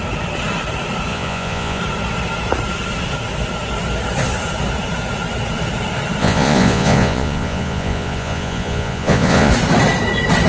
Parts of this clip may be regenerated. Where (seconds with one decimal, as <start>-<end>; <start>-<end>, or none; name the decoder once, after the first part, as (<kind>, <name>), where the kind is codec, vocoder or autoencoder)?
1.1-1.8 (vocoder, Vocos); 6.2-9.5